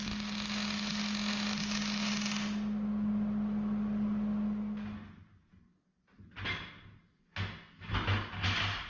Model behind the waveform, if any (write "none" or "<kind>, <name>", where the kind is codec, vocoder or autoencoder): none